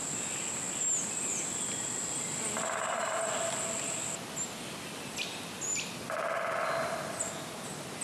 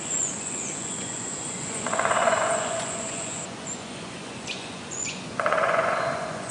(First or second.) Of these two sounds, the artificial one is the second